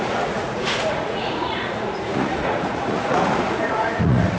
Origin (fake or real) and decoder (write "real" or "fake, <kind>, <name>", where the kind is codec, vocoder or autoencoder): fake, vocoder, Vocos